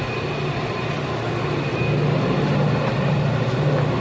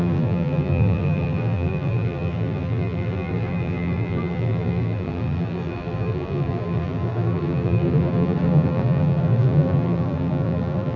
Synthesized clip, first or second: second